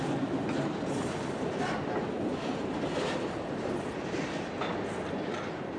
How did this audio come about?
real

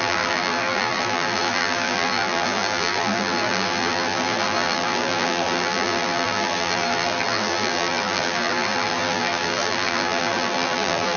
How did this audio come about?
fake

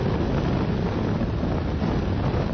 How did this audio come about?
real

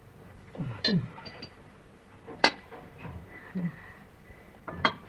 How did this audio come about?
fake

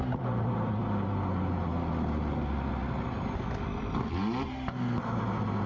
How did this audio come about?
real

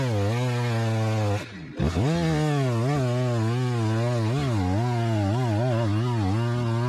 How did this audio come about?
real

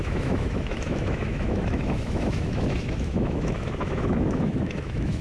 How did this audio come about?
fake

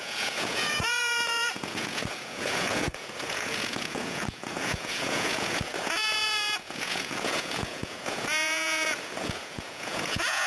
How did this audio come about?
fake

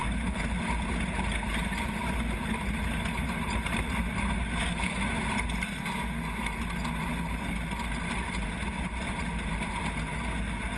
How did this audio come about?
real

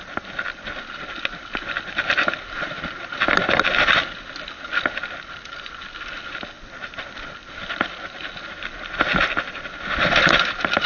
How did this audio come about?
real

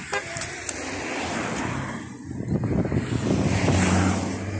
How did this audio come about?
real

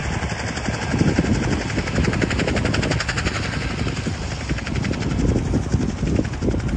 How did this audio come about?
real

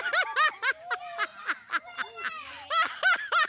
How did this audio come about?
real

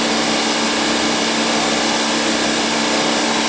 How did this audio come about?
real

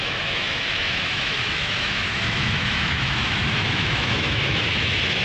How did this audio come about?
fake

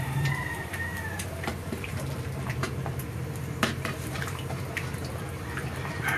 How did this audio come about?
fake